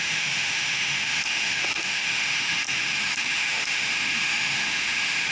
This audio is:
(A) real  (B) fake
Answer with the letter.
B